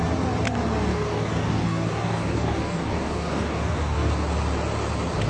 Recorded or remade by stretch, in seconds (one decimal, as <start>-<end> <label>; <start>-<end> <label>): 0.0-0.9 recorded; 0.9-4.1 remade; 4.1-5.3 recorded